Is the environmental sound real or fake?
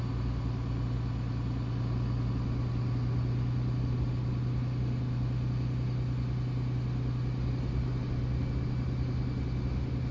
real